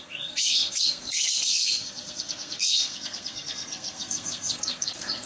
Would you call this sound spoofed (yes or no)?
yes